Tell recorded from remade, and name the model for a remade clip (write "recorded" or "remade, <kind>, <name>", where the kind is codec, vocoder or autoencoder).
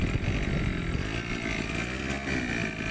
recorded